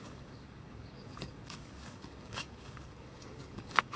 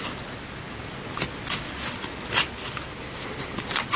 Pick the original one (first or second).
second